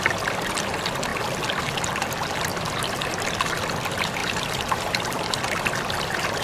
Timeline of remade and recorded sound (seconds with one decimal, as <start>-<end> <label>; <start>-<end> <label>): 0.0-2.5 recorded; 2.5-3.1 remade; 3.1-4.2 recorded; 4.2-5.4 remade; 5.4-6.4 recorded